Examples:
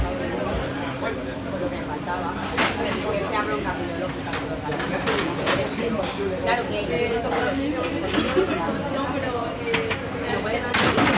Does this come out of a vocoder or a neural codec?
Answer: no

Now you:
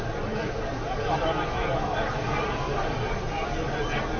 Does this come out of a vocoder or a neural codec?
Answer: no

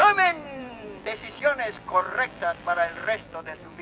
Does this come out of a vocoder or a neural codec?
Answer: yes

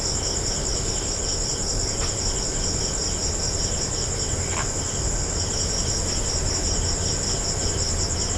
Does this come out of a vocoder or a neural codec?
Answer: no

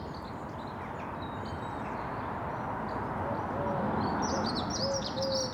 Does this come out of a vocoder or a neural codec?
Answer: no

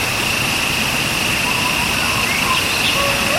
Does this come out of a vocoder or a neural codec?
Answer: no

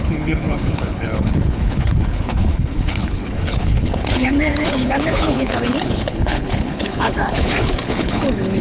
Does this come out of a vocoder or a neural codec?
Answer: yes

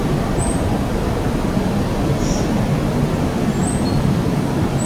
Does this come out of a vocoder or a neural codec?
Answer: no